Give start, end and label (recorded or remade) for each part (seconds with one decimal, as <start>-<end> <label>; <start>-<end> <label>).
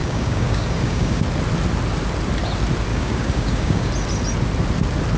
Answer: 0.0-1.2 remade; 1.2-2.9 recorded; 2.9-3.9 remade; 3.9-5.2 recorded